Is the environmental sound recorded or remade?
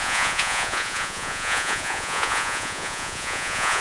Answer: remade